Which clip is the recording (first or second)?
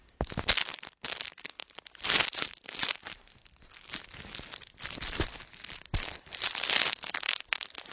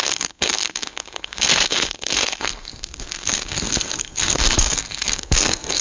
first